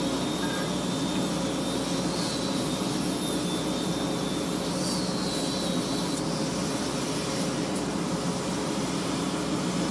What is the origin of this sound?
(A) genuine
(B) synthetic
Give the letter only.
A